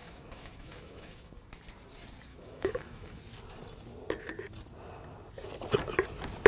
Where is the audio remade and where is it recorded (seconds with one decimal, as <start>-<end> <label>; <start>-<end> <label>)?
0.0-1.4 remade; 1.4-2.3 recorded; 2.3-3.2 remade; 3.2-6.5 recorded